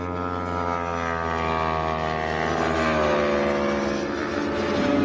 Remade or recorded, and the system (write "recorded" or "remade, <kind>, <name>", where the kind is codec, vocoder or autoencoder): recorded